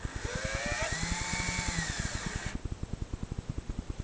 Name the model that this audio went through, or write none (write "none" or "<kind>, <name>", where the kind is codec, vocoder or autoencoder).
none